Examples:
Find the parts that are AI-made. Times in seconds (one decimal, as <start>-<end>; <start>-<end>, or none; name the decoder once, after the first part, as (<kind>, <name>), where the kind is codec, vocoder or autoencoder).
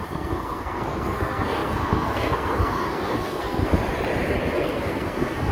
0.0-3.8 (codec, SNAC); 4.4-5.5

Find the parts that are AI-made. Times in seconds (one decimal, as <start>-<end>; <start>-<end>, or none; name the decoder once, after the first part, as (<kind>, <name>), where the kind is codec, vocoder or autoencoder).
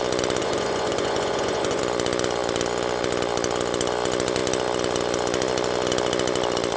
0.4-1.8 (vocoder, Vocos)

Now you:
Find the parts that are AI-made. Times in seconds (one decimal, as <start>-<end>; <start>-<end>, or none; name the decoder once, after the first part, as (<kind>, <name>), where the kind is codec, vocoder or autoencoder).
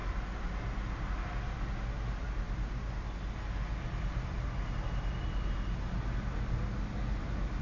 none